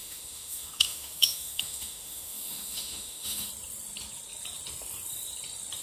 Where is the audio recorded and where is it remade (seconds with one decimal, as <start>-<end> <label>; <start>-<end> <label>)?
0.0-3.5 remade; 3.5-5.8 recorded